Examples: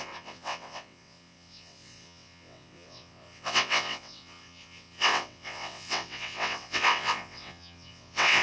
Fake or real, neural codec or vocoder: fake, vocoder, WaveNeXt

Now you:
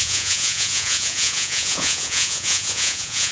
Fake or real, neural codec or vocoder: fake, vocoder, Vocos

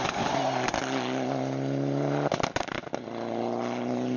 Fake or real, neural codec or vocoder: real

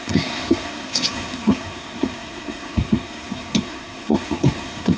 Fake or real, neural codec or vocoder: fake, codec, SNAC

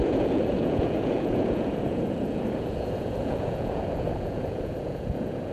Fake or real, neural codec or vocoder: fake, vocoder, Vocos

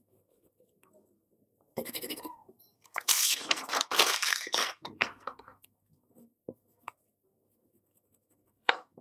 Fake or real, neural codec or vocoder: fake, codec, SNAC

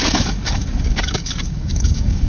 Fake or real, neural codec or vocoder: fake, codec, DAC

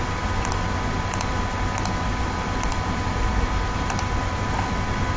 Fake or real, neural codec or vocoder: real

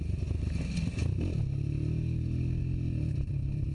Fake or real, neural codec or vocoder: real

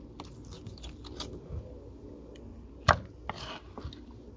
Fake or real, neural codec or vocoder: real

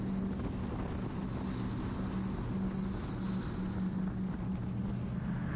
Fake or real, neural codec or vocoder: real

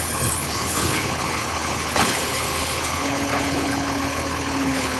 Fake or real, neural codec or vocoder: fake, codec, HILCodec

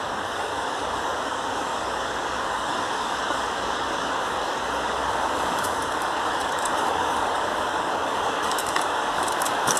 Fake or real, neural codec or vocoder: fake, codec, DAC